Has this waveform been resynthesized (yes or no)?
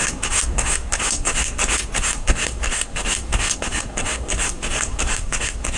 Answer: yes